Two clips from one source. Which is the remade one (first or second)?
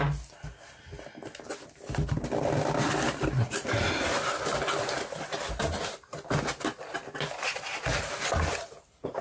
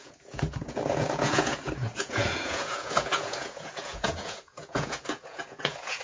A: second